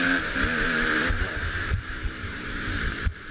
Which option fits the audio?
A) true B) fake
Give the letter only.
B